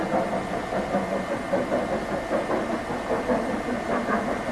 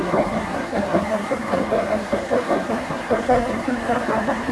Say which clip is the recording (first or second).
first